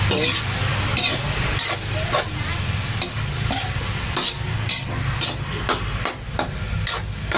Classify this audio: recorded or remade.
recorded